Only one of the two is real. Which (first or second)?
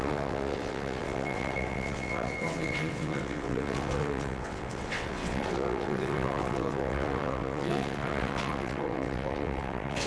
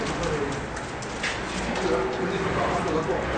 second